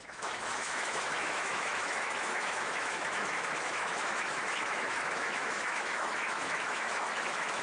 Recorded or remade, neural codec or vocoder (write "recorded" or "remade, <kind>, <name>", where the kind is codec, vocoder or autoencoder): remade, autoencoder, DAC-VAE